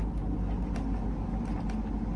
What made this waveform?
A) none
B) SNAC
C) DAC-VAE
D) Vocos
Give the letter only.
A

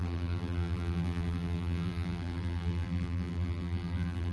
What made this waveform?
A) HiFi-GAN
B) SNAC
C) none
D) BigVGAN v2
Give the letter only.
D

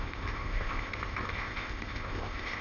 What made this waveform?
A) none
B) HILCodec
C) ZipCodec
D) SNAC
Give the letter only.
C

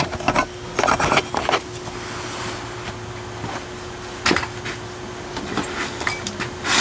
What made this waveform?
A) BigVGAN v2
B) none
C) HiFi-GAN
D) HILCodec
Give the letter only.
B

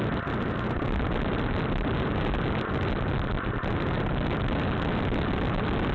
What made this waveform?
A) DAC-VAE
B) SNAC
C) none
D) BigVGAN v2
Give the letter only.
C